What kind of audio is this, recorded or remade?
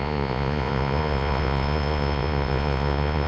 remade